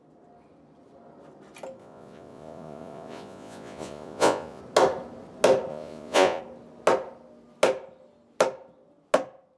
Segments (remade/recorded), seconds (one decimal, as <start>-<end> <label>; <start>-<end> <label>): 0.0-1.8 recorded; 1.8-4.6 remade; 4.6-5.7 recorded; 5.7-6.4 remade; 6.4-9.6 recorded